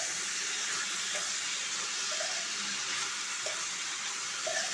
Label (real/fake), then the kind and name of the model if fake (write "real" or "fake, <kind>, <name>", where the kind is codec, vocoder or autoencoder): real